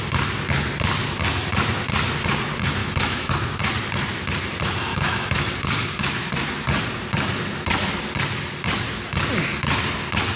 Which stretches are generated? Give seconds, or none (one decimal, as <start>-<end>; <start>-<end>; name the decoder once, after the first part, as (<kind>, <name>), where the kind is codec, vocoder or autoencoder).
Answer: 2.8-3.3 (autoencoder, DAC-VAE); 4.9-5.5